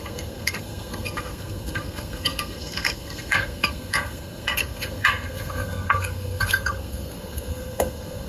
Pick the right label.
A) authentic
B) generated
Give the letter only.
B